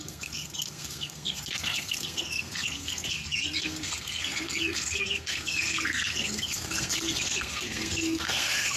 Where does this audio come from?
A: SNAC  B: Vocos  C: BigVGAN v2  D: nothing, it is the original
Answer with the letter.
A